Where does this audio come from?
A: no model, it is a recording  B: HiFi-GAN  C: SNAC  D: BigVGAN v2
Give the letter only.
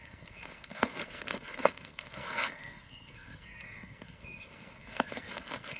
C